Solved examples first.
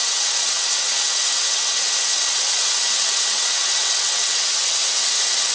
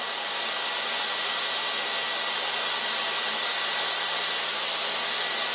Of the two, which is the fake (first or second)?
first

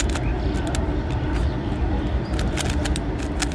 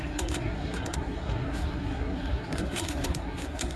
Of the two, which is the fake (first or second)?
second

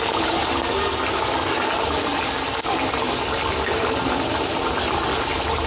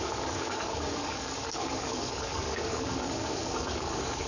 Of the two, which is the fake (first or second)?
second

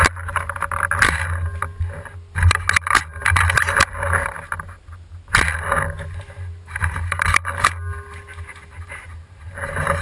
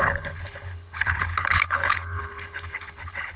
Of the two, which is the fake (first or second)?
second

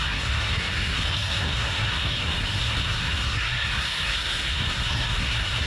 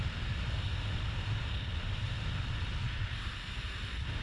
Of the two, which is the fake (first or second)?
first